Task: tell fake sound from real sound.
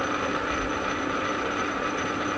real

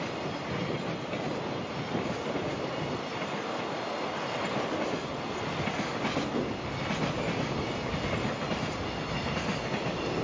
real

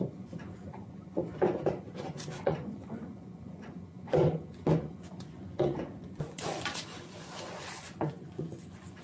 fake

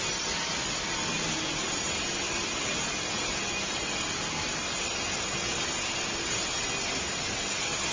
real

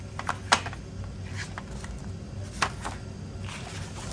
real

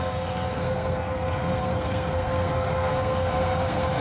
fake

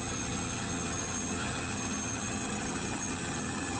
fake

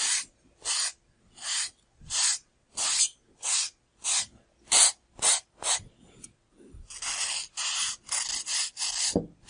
real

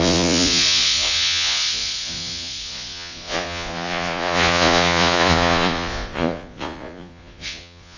fake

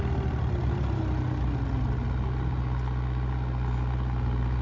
real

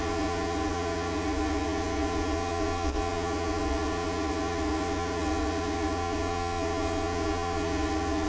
fake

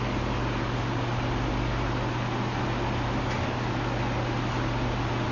real